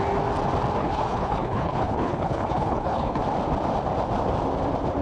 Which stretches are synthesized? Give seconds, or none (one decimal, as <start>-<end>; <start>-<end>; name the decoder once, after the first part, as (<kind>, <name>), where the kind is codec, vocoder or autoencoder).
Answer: 0.8-3.2 (codec, HILCodec)